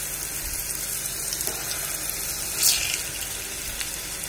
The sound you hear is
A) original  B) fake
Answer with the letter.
A